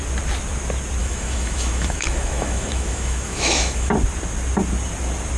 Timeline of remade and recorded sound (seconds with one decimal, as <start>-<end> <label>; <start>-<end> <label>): 0.0-1.0 recorded; 1.0-3.9 remade; 3.9-5.4 recorded